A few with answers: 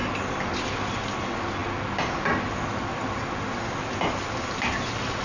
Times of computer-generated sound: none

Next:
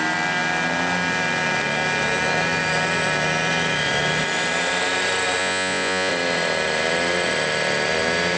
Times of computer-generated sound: 5.4-6.1 (vocoder, Vocos)

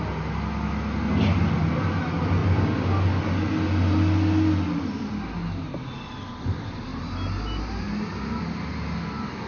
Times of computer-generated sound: none

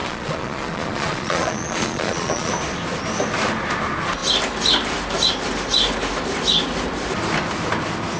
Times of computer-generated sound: 0.0-2.5 (vocoder, Vocos)

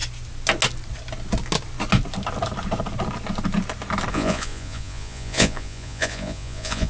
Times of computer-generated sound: 4.1-6.9 (vocoder, Vocos)